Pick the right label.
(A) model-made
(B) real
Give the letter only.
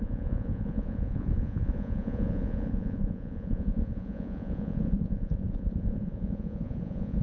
A